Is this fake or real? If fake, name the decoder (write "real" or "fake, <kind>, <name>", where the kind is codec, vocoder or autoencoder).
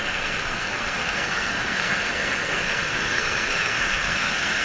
fake, codec, SNAC